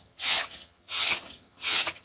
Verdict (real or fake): fake